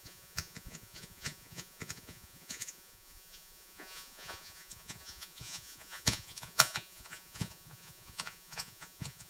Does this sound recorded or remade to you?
remade